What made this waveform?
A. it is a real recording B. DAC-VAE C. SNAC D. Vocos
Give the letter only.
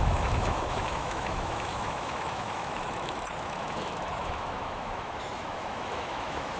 B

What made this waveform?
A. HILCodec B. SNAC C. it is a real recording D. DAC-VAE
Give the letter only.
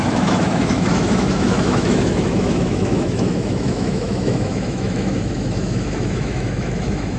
D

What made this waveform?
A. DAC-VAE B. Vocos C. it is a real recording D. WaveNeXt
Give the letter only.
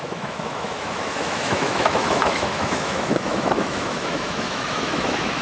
A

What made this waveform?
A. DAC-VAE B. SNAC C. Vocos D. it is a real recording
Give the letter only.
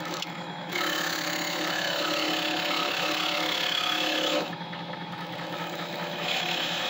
A